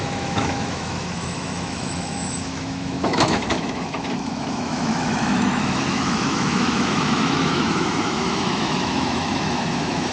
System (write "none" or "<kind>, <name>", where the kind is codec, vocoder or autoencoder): autoencoder, DAC-VAE